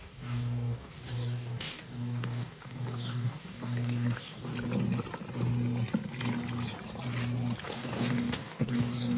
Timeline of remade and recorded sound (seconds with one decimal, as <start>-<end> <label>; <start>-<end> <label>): 0.0-4.5 remade; 4.5-7.6 recorded; 7.6-9.2 remade